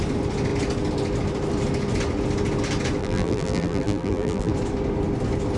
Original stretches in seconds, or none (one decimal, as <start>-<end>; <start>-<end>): 0.0-3.0; 4.5-5.6